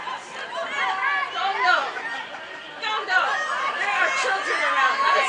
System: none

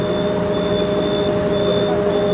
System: none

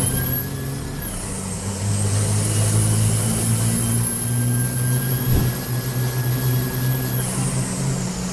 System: none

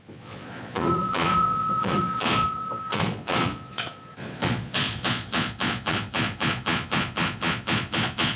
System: vocoder, Vocos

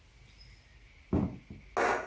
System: none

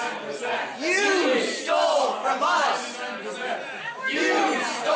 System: none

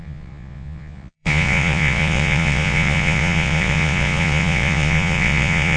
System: vocoder, Vocos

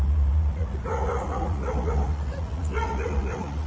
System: vocoder, Vocos